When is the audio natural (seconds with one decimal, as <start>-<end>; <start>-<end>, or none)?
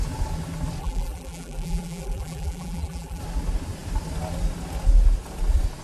0.0-0.8; 3.2-5.8